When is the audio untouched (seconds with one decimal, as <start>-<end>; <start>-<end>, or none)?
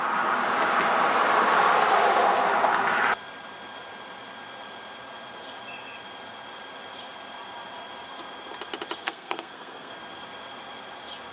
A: 0.0-9.0; 9.9-11.3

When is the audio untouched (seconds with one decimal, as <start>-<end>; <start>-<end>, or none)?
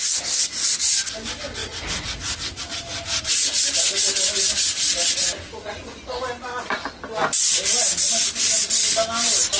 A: 0.0-1.6; 2.6-9.6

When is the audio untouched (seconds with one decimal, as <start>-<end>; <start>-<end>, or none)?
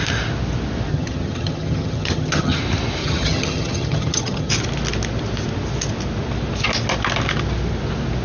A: 0.0-0.9; 2.6-3.0; 4.5-8.2